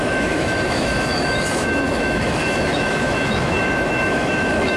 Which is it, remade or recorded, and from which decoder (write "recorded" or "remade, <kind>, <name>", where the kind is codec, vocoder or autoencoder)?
remade, autoencoder, DAC-VAE